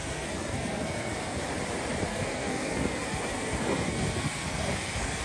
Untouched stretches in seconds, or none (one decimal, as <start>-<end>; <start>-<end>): 1.4-2.1